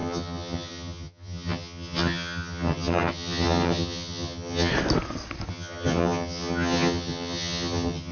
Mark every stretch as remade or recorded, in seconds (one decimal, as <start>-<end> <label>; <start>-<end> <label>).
0.0-4.7 remade; 4.7-5.5 recorded; 5.5-8.1 remade